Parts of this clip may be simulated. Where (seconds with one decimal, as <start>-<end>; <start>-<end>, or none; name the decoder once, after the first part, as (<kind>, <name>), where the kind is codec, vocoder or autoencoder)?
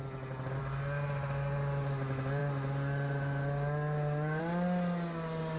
none